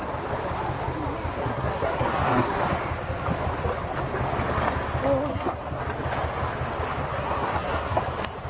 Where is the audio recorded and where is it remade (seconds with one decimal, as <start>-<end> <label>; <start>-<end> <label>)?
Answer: 0.0-1.4 recorded; 1.4-2.6 remade; 2.6-5.3 recorded; 5.3-5.8 remade; 5.8-7.0 recorded; 7.0-8.0 remade; 8.0-8.5 recorded